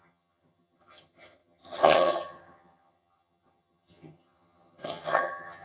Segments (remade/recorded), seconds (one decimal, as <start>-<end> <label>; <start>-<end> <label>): 0.0-5.6 remade